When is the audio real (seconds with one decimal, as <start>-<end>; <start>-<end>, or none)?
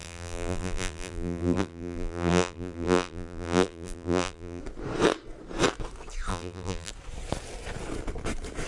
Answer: 4.6-6.3; 6.9-8.7